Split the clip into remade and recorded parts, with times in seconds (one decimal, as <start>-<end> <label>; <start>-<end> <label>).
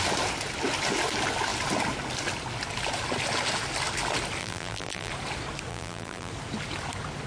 0.0-4.4 recorded; 4.4-5.1 remade; 5.1-5.7 recorded; 5.7-6.3 remade; 6.3-7.3 recorded